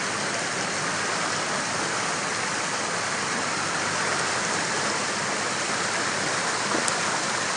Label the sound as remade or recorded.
recorded